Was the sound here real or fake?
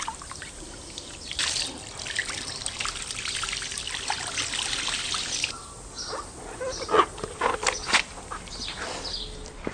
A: real